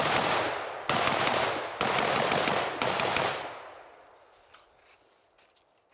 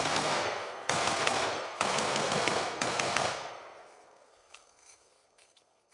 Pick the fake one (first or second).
second